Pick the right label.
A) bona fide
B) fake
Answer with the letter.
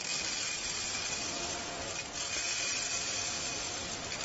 A